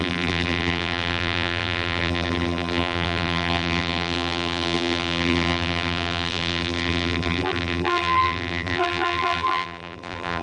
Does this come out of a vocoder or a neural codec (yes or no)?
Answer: yes